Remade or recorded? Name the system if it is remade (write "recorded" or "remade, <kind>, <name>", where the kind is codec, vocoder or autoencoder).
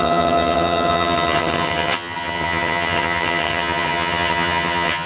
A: remade, vocoder, HiFi-GAN